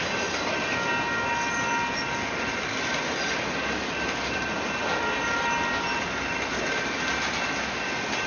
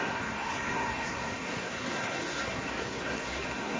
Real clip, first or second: first